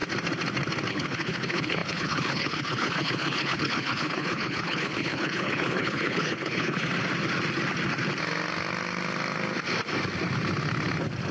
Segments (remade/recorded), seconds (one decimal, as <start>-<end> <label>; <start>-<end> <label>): 0.0-0.9 recorded; 0.9-6.9 remade; 6.9-11.3 recorded